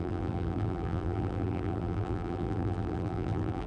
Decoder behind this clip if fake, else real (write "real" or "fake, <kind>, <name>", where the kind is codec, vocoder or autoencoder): fake, vocoder, BigVGAN v2